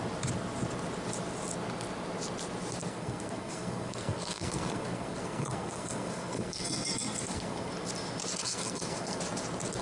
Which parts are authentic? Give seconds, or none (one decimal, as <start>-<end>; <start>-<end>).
0.0-2.8; 7.7-8.4; 9.2-9.8